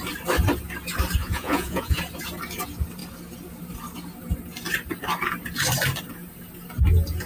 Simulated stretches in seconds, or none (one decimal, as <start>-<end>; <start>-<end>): 1.2-2.0